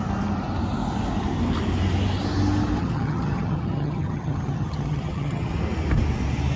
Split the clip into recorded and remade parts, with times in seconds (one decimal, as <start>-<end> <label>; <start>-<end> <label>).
0.0-2.8 recorded; 2.8-5.5 remade; 5.5-6.6 recorded

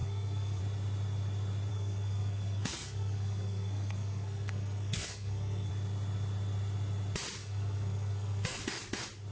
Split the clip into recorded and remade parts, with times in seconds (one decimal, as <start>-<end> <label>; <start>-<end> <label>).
0.0-0.6 remade; 0.6-1.7 recorded; 1.7-5.7 remade; 5.7-7.4 recorded; 7.4-8.6 remade; 8.6-9.3 recorded